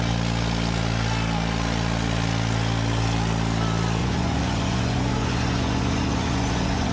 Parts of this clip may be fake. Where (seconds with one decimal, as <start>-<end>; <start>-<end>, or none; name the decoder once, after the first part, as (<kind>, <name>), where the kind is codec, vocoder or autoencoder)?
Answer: 4.0-6.9 (vocoder, Vocos)